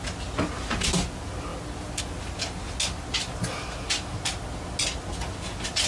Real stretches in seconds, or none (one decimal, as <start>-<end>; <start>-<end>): 0.0-5.9